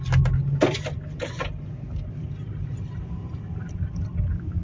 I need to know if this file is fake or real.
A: real